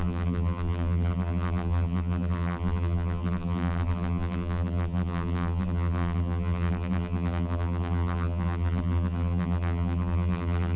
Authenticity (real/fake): fake